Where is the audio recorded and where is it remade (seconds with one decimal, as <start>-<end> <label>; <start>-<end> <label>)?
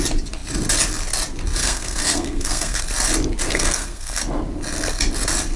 0.0-1.6 recorded; 1.6-2.8 remade; 2.8-3.5 recorded; 3.5-4.2 remade; 4.2-5.6 recorded